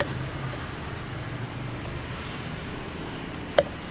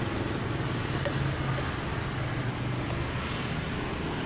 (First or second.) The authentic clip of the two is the second